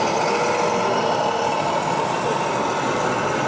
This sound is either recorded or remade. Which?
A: recorded